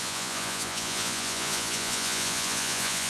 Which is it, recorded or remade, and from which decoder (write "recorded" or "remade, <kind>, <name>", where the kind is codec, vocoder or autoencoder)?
remade, vocoder, Vocos